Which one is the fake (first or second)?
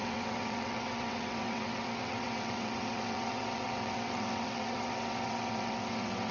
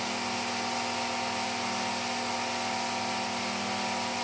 first